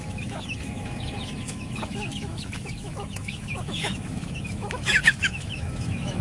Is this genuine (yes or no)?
no